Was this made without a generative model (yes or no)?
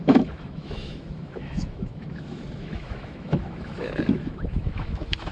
no